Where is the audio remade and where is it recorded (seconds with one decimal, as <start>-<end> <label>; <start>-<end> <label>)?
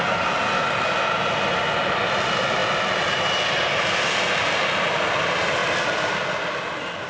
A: 0.0-7.1 recorded